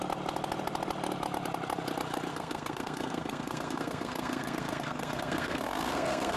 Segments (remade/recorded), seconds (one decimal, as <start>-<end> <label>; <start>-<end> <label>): 0.0-2.3 recorded; 2.3-6.4 remade